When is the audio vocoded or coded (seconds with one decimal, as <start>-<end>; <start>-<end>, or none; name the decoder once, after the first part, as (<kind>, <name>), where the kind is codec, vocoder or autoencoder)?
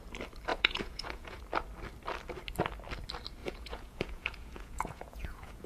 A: 0.5-1.4 (vocoder, Vocos); 3.4-5.7